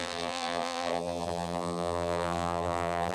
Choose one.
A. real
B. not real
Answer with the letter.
B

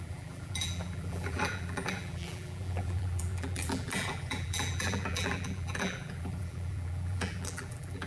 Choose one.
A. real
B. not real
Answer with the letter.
B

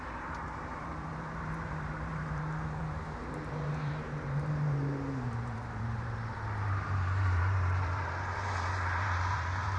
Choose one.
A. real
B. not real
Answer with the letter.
B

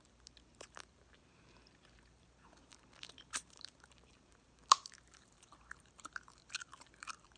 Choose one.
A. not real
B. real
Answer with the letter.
A